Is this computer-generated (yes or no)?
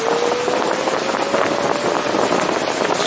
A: no